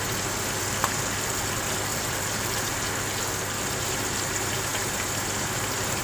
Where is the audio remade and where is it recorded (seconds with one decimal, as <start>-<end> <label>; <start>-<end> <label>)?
0.0-1.9 recorded; 1.9-2.8 remade; 2.8-6.0 recorded